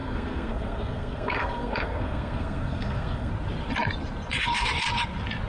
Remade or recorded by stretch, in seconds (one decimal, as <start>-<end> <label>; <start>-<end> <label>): 0.0-3.3 remade; 3.3-5.5 recorded